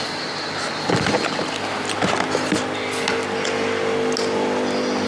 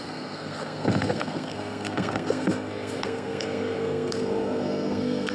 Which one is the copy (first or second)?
second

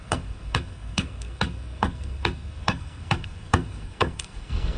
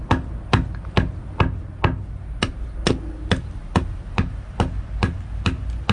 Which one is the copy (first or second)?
first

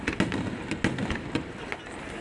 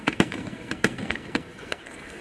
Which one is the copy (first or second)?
second